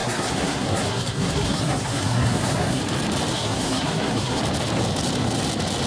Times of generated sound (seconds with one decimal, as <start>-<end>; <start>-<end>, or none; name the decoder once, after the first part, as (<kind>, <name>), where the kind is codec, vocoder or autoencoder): 0.0-2.8 (codec, SNAC); 3.3-4.4